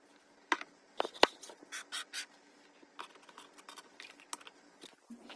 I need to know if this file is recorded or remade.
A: recorded